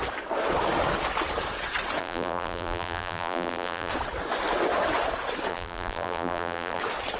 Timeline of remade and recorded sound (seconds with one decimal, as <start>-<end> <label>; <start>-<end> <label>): 0.0-2.0 recorded; 2.0-3.9 remade; 3.9-5.5 recorded; 5.5-6.8 remade; 6.8-7.2 recorded